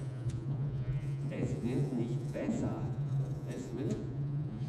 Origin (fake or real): fake